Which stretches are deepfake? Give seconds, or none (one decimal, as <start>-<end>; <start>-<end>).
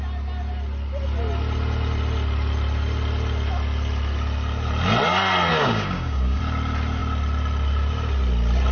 5.5-6.4